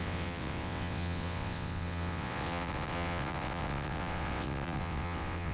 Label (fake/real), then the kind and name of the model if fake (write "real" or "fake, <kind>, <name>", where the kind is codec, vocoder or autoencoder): fake, vocoder, WaveNeXt